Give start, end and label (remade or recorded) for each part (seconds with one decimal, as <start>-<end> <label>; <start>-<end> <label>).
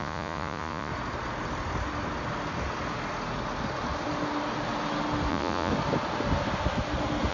0.0-0.9 remade; 0.9-5.3 recorded; 5.3-5.7 remade; 5.7-7.3 recorded